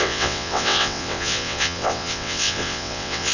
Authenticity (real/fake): fake